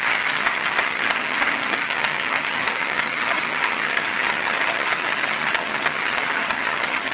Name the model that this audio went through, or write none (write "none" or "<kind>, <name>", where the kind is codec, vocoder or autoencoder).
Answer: vocoder, HiFi-GAN